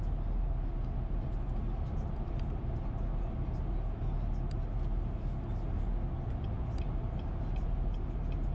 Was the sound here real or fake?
real